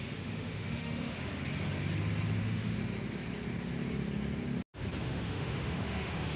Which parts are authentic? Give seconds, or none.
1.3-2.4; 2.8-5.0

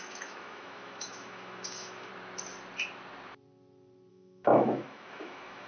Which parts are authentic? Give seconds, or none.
2.1-4.1

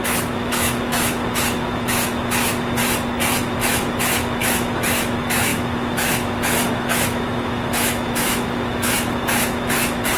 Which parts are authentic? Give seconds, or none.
2.8-3.4